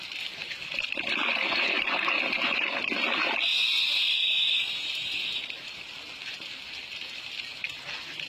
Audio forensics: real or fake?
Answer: real